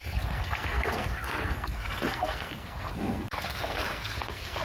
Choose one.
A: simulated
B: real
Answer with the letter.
A